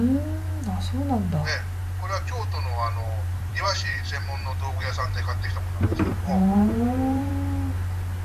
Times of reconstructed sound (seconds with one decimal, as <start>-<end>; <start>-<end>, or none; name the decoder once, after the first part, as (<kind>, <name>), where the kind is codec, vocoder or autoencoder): 1.8-5.5 (vocoder, BigVGAN v2); 5.9-7.3